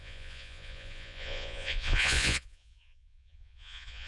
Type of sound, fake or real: fake